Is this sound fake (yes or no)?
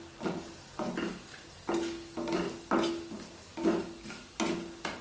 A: no